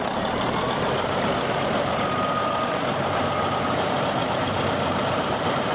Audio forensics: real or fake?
fake